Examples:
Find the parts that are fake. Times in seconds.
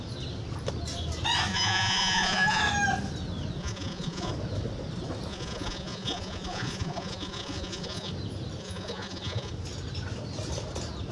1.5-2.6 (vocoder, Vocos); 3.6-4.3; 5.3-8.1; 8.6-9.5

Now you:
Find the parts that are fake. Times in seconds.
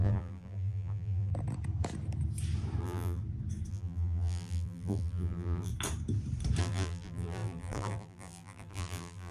0.0-1.3 (vocoder, BigVGAN v2); 2.8-3.2; 3.7-5.7; 6.6-9.3